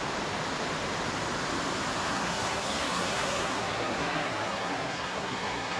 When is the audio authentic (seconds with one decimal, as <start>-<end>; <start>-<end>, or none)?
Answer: 0.0-2.1